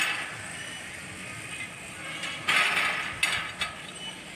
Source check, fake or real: real